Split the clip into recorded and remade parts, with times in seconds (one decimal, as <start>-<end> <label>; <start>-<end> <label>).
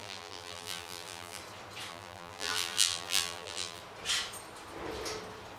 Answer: 0.0-1.4 remade; 1.4-1.9 recorded; 1.9-3.8 remade; 3.8-5.6 recorded